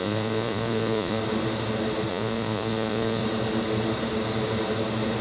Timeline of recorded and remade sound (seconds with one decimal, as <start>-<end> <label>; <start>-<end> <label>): 0.0-1.2 remade; 1.2-2.1 recorded; 2.1-3.2 remade; 3.2-5.2 recorded